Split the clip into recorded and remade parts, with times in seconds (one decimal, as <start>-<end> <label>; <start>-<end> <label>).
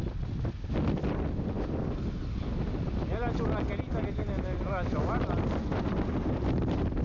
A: 0.0-7.0 recorded